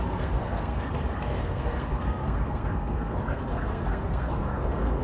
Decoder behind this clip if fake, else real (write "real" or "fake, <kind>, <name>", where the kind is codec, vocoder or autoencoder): fake, codec, SNAC